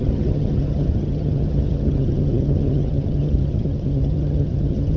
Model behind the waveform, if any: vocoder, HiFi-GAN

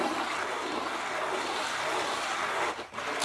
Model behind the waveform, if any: none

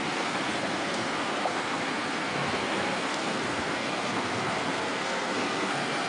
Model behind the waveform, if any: codec, SNAC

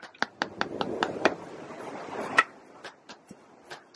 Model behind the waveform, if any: none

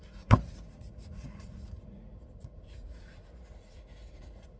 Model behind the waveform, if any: vocoder, Vocos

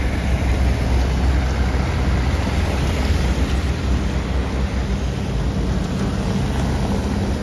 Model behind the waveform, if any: none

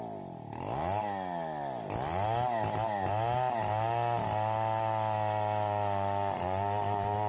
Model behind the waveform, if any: none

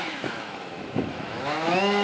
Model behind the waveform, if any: autoencoder, DAC-VAE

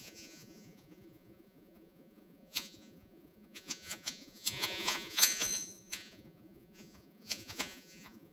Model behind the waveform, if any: vocoder, Vocos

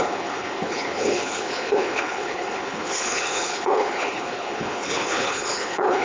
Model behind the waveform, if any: codec, HILCodec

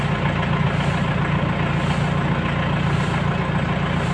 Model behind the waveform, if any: none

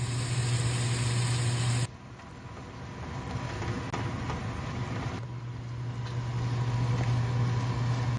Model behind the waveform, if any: none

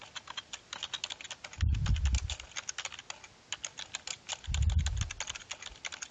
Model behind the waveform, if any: none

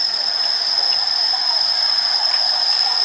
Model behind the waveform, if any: vocoder, BigVGAN v2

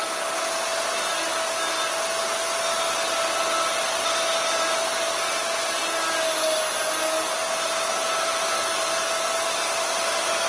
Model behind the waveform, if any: none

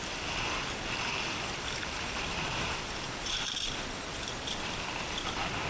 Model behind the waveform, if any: none